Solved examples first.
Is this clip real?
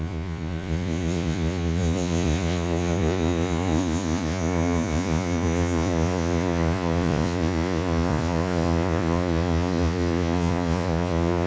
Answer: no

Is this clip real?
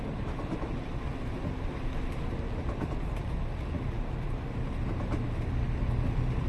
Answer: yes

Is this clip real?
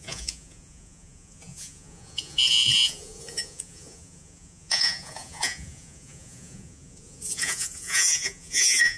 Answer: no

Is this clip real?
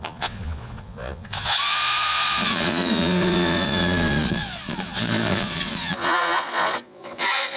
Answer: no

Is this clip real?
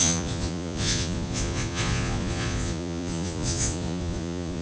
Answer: no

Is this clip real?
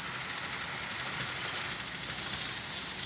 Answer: yes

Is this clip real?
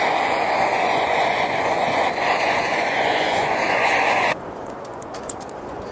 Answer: no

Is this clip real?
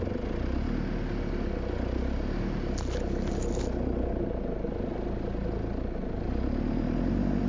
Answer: yes